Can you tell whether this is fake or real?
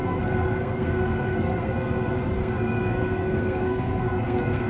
fake